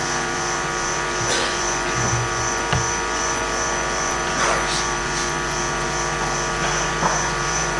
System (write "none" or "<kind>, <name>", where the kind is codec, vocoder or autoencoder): vocoder, Vocos